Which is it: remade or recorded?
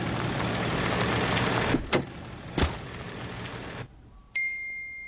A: recorded